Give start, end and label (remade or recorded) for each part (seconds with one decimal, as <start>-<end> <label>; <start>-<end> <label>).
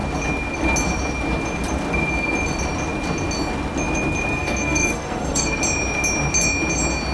0.0-4.3 recorded; 4.3-5.6 remade; 5.6-7.1 recorded